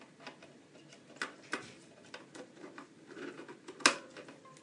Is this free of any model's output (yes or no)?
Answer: yes